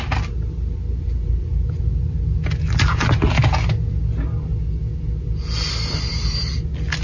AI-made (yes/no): no